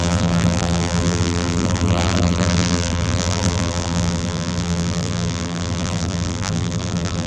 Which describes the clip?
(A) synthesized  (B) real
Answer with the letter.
A